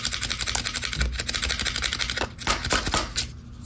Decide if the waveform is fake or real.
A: real